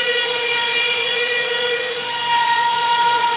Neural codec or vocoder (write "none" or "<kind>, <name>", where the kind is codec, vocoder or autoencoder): vocoder, Vocos